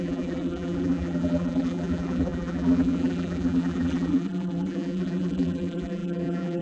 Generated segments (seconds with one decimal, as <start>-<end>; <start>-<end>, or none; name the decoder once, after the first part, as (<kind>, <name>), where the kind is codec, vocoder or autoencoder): 0.0-6.6 (vocoder, BigVGAN v2)